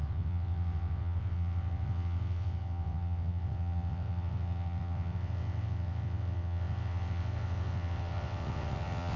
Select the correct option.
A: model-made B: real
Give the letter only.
A